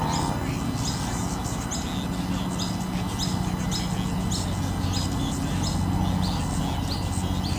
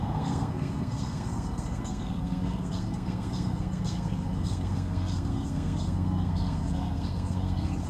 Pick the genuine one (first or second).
first